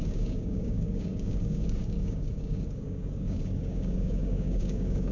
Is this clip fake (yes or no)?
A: yes